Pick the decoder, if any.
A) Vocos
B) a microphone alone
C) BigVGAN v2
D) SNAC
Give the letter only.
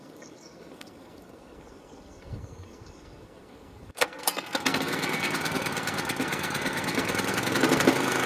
D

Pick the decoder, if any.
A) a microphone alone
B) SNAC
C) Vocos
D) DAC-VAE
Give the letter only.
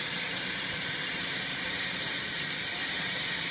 A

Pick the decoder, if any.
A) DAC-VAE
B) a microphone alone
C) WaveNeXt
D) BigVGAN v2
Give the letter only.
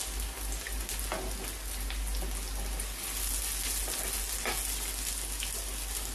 B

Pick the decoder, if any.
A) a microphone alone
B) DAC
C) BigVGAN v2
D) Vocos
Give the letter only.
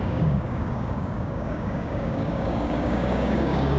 B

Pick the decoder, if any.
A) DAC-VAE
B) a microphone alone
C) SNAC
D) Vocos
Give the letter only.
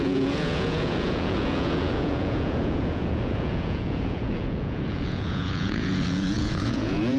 D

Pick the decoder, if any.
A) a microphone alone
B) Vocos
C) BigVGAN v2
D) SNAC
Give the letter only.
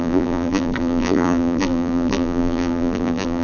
C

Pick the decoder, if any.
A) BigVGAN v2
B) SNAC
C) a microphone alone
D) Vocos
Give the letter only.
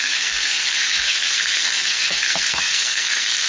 B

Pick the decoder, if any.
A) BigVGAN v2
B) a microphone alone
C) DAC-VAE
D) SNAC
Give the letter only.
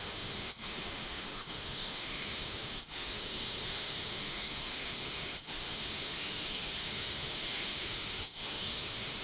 C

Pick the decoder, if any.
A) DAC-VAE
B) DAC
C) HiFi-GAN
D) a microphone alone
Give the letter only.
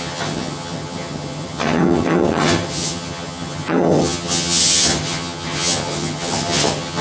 C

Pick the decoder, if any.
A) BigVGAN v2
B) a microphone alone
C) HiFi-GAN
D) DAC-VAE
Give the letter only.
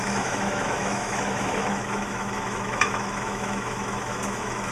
D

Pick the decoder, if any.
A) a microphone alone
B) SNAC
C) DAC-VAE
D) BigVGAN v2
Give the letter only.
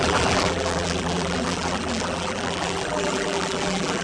D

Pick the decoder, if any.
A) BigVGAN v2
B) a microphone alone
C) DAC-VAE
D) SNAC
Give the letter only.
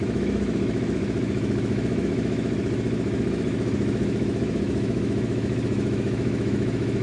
C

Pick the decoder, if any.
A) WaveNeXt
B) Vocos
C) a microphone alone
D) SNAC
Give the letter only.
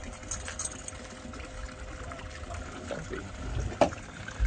C